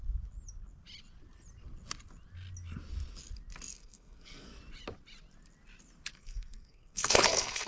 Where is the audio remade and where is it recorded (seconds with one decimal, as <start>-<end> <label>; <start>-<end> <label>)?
0.0-3.7 recorded; 3.7-4.6 remade; 4.6-6.1 recorded; 6.1-7.7 remade